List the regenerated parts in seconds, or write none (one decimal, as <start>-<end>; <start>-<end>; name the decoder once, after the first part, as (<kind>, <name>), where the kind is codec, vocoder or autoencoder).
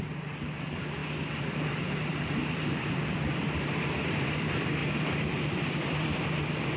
0.0-6.8 (vocoder, BigVGAN v2)